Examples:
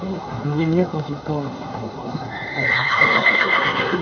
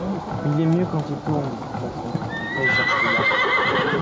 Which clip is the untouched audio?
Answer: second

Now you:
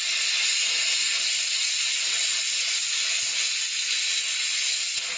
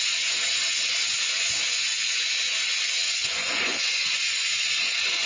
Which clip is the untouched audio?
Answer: first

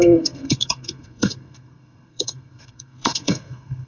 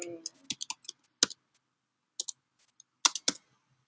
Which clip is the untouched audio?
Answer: second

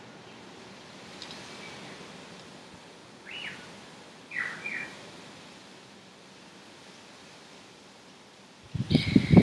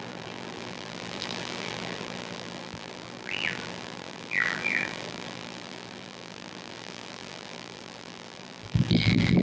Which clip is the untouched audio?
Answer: first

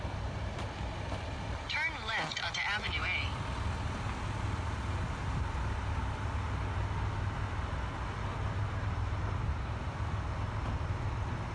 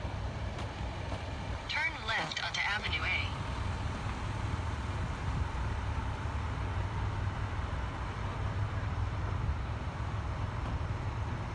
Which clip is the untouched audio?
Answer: first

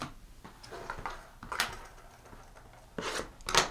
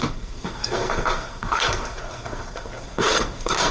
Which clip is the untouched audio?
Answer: first